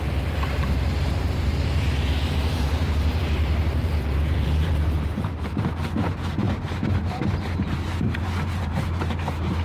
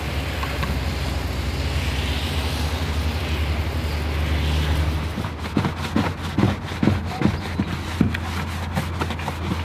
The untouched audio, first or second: second